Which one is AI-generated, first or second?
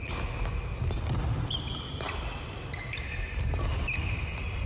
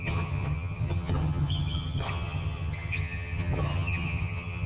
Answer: second